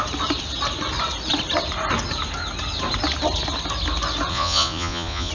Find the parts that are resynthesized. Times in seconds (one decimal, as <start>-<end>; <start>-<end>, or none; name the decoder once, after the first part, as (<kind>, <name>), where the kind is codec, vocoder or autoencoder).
4.3-5.3 (vocoder, Vocos)